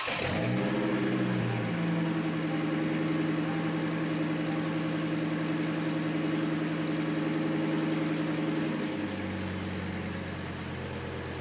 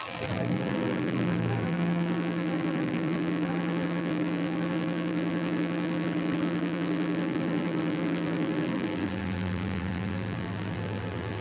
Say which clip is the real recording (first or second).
first